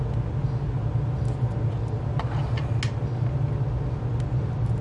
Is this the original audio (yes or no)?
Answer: yes